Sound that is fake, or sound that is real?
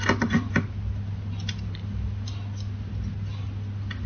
real